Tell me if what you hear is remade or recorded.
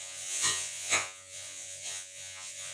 remade